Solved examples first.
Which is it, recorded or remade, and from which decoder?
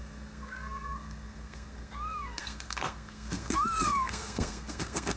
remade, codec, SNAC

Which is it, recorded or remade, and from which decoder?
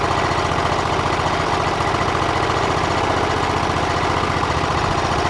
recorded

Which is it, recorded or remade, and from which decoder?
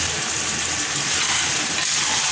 recorded